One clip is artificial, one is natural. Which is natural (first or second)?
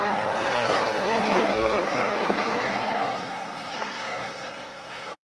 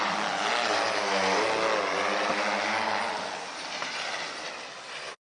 second